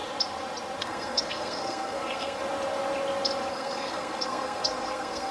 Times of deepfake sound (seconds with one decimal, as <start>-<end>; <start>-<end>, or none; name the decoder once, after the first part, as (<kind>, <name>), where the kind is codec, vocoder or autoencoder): 0.8-2.4 (codec, SNAC); 3.5-5.3